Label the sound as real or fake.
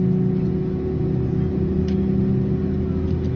real